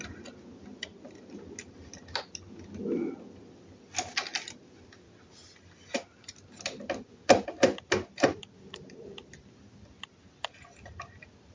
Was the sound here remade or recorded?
recorded